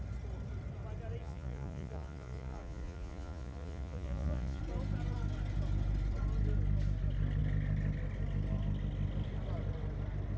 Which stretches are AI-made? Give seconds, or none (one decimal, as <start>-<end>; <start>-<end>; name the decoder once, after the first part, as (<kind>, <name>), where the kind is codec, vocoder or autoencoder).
1.2-4.6 (vocoder, Vocos)